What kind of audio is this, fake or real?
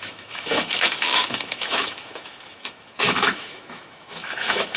fake